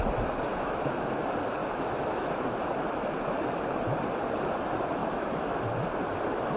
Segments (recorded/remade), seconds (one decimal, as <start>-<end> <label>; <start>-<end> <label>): 0.0-0.5 recorded; 0.5-1.2 remade; 1.2-1.6 recorded; 1.6-2.6 remade; 2.6-5.0 recorded; 5.0-5.6 remade; 5.6-6.6 recorded